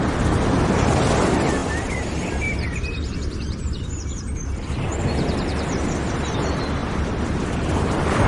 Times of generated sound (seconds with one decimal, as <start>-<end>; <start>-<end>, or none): 1.6-4.7; 6.8-7.7